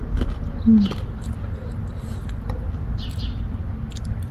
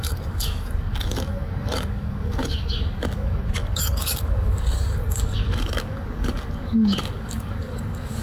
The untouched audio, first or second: first